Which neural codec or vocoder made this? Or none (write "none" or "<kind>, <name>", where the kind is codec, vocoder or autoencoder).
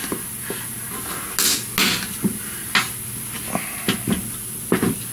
none